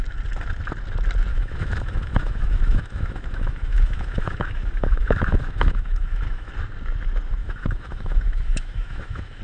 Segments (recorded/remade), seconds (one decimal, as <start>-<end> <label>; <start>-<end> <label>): 0.0-1.3 recorded; 1.3-6.5 remade; 6.5-7.4 recorded; 7.4-9.4 remade